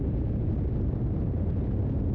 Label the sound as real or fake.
real